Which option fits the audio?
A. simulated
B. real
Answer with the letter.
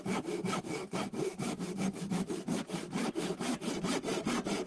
A